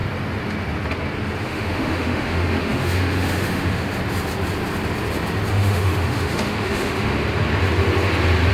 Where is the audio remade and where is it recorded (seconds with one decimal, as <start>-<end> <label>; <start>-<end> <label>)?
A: 0.0-1.4 recorded; 1.4-3.9 remade; 3.9-5.5 recorded; 5.5-7.1 remade; 7.1-8.5 recorded